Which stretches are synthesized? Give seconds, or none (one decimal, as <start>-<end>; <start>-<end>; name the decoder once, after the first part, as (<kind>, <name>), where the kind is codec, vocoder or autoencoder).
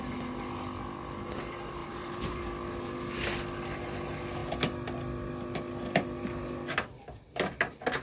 1.8-2.4 (vocoder, BigVGAN v2)